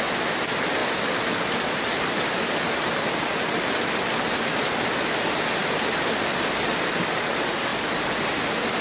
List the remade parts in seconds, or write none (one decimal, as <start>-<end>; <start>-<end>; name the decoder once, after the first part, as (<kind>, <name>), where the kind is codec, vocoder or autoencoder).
0.8-2.5 (vocoder, BigVGAN v2); 5.6-6.7